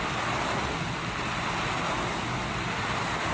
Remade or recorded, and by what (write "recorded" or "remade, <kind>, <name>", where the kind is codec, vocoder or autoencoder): recorded